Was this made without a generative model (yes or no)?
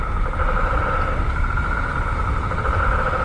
yes